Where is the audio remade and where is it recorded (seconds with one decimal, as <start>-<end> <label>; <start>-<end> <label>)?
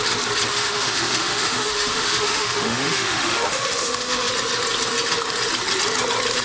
0.0-0.5 recorded; 0.5-4.3 remade; 4.3-6.4 recorded